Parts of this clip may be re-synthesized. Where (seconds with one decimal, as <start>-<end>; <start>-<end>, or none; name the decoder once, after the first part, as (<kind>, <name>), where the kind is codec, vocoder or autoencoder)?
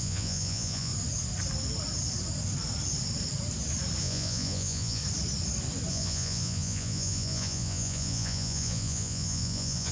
0.0-0.9 (vocoder, Vocos); 4.0-5.0; 5.9-9.9